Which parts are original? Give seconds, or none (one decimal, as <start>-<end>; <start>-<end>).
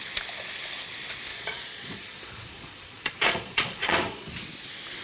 0.0-1.3; 4.3-5.0